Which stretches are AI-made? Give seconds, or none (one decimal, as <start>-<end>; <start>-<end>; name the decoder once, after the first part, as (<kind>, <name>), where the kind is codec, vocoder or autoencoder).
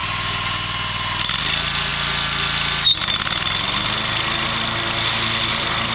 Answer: 1.4-1.9 (vocoder, BigVGAN v2); 5.4-5.9